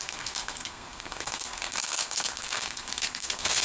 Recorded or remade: remade